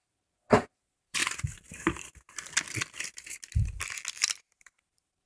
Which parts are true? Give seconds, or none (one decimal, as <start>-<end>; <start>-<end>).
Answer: 1.2-4.4